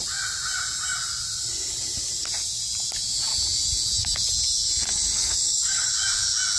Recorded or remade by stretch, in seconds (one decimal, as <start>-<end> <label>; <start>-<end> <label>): 0.0-4.9 recorded; 4.9-5.9 remade; 5.9-6.6 recorded